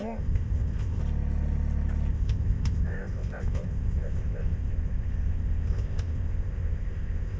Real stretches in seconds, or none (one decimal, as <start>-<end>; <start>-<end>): 1.0-2.1